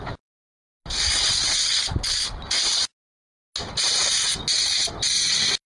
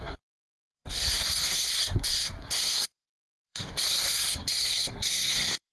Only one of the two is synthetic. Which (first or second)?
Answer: second